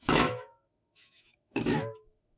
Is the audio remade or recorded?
remade